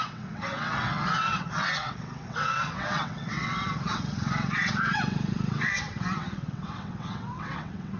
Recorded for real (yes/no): no